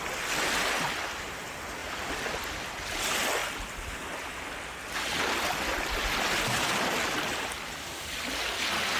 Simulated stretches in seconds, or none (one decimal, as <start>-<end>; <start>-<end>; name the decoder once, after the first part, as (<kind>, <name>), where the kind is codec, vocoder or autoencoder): 1.8-2.7 (vocoder, BigVGAN v2)